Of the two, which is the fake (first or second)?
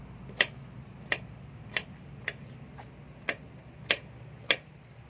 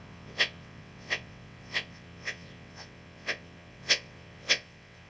second